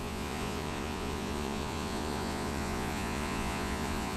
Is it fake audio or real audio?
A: fake